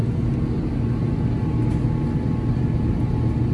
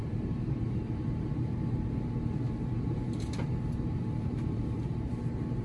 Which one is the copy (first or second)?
second